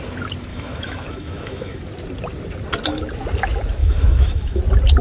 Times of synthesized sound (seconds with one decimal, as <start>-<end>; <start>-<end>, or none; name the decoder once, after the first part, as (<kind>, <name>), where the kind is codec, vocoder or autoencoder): 0.5-1.8 (autoencoder, DAC-VAE); 3.8-4.6